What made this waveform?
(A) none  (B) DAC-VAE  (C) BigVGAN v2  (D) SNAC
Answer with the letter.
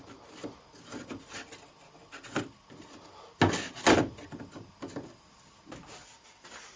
A